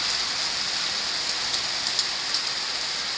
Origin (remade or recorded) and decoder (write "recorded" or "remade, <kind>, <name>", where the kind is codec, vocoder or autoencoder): recorded